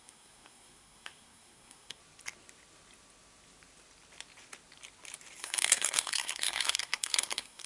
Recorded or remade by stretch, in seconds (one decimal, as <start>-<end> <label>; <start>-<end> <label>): 0.0-2.0 remade; 2.0-5.4 recorded; 5.4-7.7 remade